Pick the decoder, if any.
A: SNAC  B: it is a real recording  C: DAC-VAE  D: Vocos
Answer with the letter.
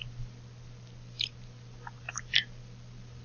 B